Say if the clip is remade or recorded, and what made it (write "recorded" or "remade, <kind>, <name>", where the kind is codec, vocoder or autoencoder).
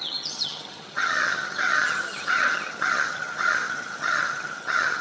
remade, vocoder, HiFi-GAN